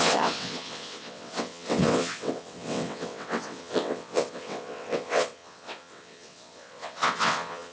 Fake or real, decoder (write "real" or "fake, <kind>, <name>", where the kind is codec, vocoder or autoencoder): fake, vocoder, WaveNeXt